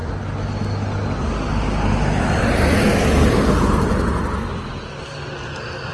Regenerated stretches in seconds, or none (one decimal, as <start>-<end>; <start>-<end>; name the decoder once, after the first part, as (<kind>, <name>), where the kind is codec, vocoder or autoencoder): none